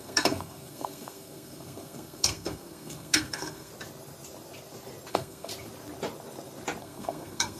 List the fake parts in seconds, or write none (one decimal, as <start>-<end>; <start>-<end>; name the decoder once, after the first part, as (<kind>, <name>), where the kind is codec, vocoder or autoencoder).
0.0-3.7 (codec, SNAC); 5.1-5.5; 6.8-7.6